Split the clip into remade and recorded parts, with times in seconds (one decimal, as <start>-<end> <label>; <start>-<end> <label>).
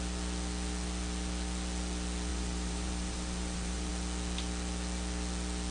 0.0-2.3 recorded; 2.3-3.9 remade; 3.9-5.7 recorded